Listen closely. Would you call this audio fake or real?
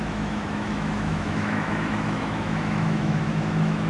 fake